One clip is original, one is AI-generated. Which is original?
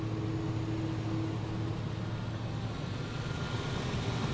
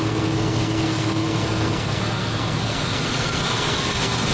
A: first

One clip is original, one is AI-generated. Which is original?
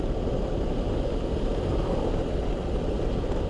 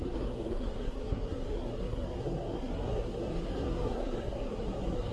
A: first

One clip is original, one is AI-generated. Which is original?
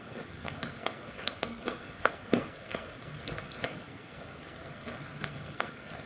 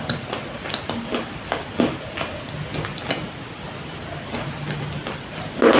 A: second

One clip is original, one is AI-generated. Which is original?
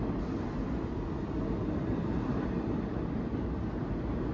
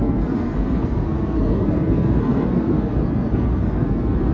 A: first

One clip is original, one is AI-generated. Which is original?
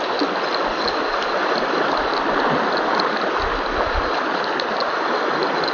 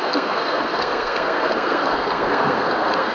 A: first